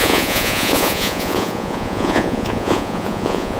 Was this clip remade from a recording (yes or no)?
yes